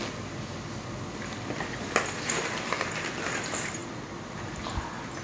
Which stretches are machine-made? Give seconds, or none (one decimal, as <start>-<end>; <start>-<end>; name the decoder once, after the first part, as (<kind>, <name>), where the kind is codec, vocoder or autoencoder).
none

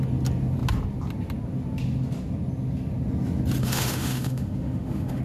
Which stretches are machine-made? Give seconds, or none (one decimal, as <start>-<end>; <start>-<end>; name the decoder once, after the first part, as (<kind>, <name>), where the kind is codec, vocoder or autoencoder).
3.6-5.2 (autoencoder, DAC-VAE)

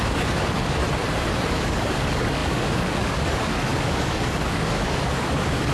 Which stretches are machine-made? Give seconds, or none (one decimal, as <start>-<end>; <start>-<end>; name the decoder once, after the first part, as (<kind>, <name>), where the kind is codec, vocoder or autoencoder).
0.0-0.8 (codec, DAC); 1.5-5.7